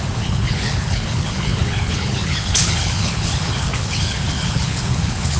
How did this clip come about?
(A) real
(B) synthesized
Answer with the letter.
B